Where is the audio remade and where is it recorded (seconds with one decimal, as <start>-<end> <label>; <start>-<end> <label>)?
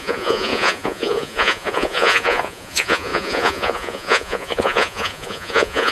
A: 0.0-5.9 remade